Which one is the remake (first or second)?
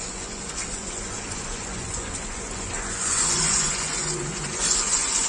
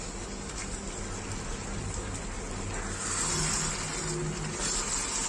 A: first